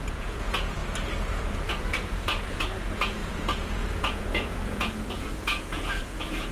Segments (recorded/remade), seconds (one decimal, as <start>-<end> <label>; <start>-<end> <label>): 0.0-0.8 remade; 0.8-1.3 recorded; 1.3-6.5 remade